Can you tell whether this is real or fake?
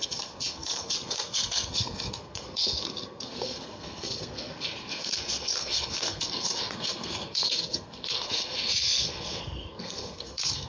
fake